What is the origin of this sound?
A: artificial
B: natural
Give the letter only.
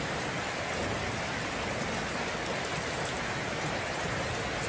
B